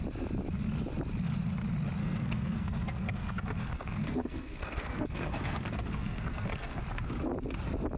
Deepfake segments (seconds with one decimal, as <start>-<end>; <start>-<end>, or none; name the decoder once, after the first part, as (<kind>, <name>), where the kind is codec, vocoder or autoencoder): 2.0-6.8 (codec, SNAC)